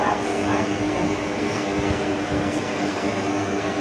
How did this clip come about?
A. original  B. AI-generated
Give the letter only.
B